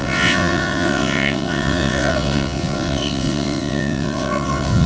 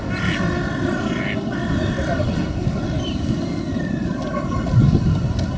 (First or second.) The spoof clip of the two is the first